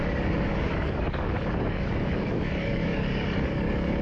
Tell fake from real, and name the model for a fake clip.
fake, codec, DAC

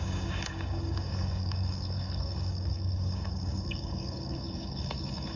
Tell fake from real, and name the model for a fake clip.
fake, codec, DAC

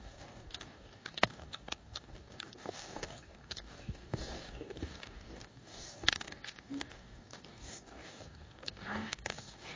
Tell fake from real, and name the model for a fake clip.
fake, codec, DAC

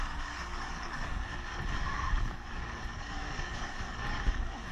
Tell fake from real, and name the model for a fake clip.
fake, codec, DAC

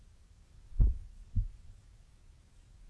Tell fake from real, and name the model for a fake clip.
fake, codec, DAC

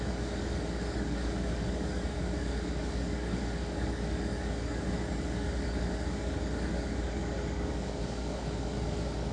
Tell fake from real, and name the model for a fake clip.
fake, codec, DAC